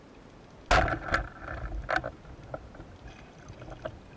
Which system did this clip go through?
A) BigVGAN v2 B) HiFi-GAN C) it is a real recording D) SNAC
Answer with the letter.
C